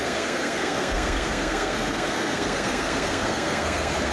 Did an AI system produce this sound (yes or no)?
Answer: yes